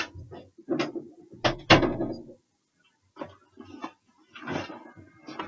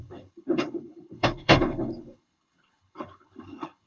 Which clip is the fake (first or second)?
second